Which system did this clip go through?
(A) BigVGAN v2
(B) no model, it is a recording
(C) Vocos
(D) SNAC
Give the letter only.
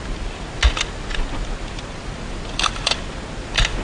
B